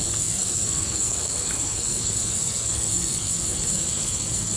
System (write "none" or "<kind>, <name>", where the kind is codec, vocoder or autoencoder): codec, SNAC